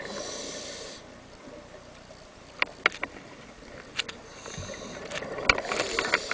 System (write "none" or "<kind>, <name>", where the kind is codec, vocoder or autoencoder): none